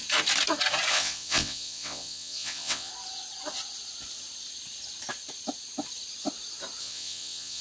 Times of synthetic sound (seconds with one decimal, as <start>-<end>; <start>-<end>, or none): 0.9-2.9; 6.8-7.6